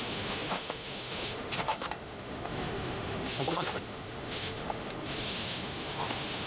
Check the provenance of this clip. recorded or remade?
remade